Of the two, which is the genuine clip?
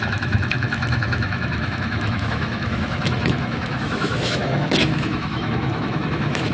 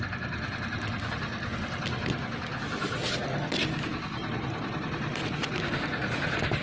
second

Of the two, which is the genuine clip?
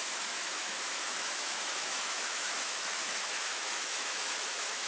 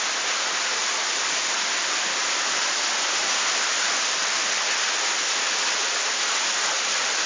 second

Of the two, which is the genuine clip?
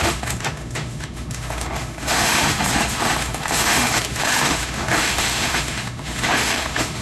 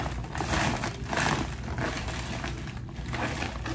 second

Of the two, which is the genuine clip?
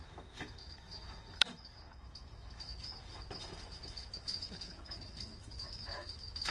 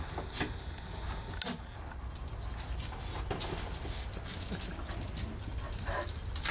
second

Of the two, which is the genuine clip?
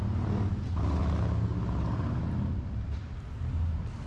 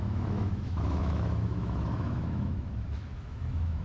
first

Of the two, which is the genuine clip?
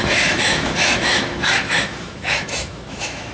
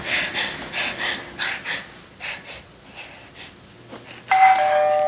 second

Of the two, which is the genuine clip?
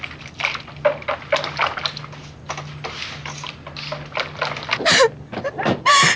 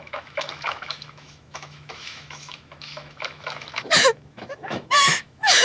first